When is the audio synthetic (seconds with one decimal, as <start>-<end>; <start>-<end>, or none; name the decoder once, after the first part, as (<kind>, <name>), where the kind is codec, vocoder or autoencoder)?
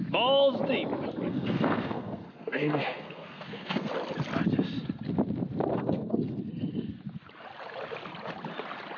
1.3-3.9 (codec, SNAC); 5.7-6.9